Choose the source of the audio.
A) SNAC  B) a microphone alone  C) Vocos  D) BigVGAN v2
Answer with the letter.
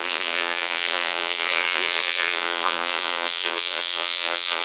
D